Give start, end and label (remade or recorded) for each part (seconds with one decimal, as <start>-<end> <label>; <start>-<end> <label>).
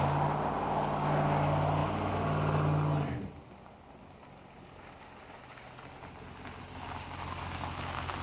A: 0.0-8.2 recorded